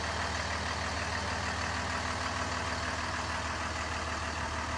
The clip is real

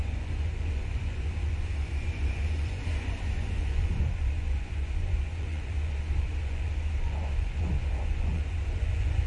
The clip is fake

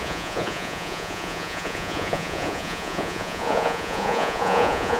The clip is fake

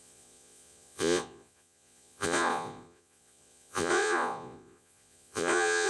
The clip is fake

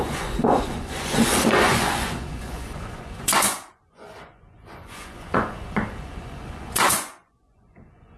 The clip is fake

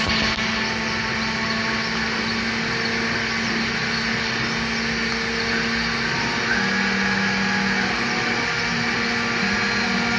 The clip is real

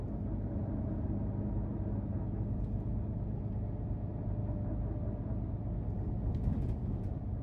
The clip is real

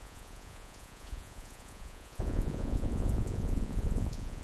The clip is fake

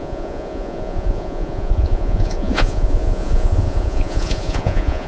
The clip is fake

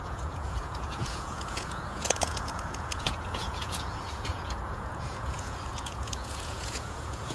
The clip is fake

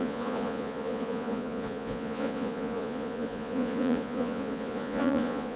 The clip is fake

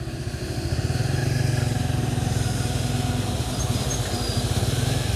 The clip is real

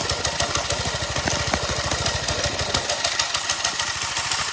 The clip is real